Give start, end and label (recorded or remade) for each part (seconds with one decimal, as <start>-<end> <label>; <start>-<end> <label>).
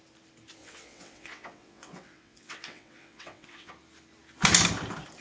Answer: 0.0-0.6 recorded; 0.6-3.7 remade; 3.7-5.2 recorded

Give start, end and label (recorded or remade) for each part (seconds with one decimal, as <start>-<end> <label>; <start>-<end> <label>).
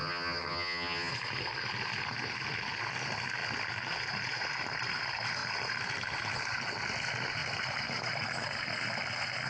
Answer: 0.0-1.1 remade; 1.1-9.5 recorded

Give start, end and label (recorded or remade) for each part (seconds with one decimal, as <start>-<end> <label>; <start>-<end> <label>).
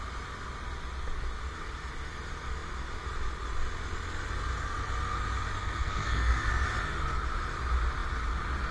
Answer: 0.0-5.6 recorded; 5.6-6.5 remade; 6.5-8.7 recorded